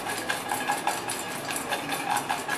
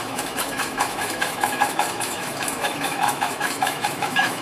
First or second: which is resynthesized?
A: second